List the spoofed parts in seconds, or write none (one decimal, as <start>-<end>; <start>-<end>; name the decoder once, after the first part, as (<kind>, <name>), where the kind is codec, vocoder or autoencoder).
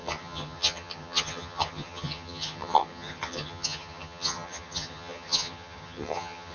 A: 0.0-6.5 (vocoder, HiFi-GAN)